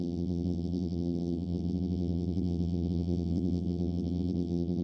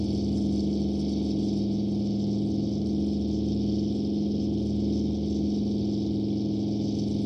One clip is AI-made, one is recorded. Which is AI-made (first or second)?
first